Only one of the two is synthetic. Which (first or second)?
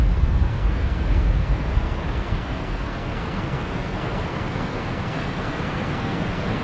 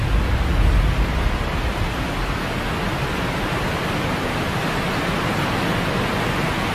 first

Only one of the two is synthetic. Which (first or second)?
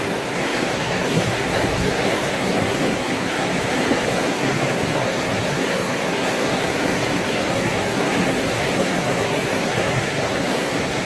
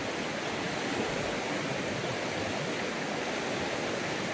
first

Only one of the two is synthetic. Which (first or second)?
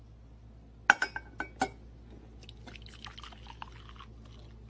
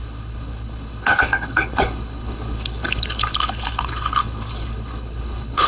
second